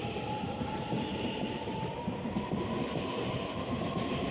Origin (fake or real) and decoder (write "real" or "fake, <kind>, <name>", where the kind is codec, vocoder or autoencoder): fake, vocoder, BigVGAN v2